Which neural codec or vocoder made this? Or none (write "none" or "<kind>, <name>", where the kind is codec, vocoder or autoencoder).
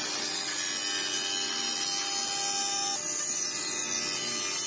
none